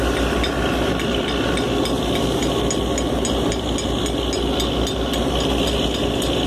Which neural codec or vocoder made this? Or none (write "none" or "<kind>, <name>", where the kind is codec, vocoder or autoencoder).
none